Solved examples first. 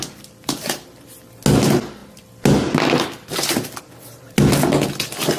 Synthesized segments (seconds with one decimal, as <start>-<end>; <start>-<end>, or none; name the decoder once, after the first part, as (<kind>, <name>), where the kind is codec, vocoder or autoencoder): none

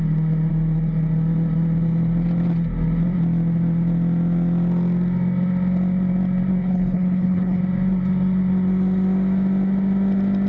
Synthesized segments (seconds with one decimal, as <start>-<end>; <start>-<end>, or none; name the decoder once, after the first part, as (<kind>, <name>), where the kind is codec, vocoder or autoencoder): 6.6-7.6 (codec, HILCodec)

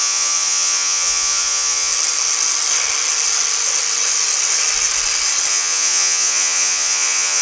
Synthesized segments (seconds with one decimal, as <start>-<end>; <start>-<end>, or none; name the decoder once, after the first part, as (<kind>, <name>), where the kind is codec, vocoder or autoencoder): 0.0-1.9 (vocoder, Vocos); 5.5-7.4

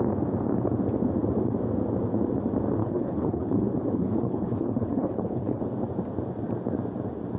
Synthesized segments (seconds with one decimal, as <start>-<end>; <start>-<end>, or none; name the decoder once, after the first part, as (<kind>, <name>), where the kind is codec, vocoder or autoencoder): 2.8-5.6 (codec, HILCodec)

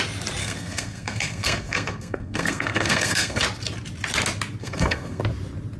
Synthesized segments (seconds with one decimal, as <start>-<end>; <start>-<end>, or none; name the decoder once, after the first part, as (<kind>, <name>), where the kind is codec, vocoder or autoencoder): 0.4-3.4 (codec, SNAC); 4.6-5.2

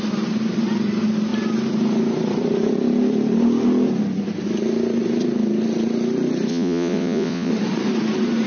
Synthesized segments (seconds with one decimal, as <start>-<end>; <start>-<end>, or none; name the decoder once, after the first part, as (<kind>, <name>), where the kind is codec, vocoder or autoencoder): 6.5-7.5 (vocoder, Vocos)

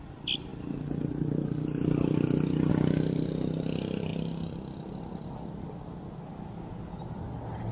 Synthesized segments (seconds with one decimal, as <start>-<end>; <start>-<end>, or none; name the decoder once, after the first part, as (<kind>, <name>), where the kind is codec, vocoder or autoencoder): none